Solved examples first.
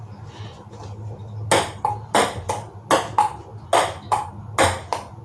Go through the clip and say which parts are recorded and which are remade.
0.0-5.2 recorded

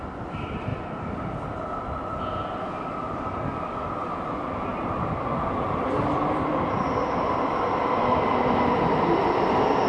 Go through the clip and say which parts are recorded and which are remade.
0.0-9.9 recorded

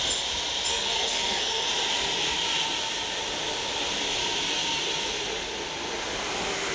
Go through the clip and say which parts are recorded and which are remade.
0.0-0.7 recorded; 0.7-1.7 remade; 1.7-6.7 recorded

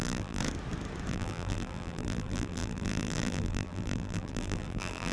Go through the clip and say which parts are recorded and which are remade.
0.0-0.4 remade; 0.4-1.1 recorded; 1.1-5.1 remade

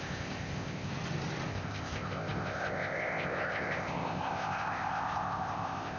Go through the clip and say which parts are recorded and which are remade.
0.0-0.9 remade; 0.9-1.5 recorded; 1.5-6.0 remade

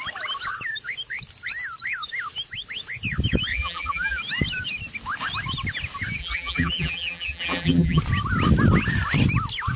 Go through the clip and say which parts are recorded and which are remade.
0.0-3.5 recorded; 3.5-4.2 remade; 4.2-6.2 recorded; 6.2-8.0 remade; 8.0-9.8 recorded

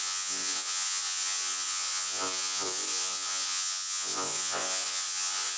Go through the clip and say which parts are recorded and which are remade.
0.0-5.6 remade